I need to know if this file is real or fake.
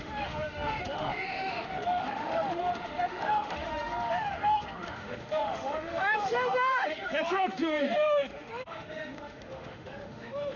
fake